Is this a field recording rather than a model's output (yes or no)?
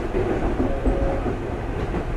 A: yes